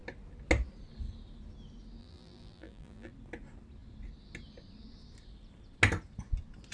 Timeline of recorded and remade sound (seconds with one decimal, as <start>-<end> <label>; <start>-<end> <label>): 0.0-2.0 recorded; 2.0-3.1 remade; 3.1-6.7 recorded